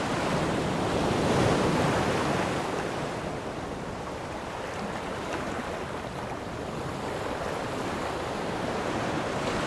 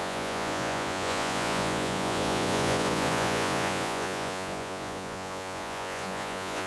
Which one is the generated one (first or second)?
second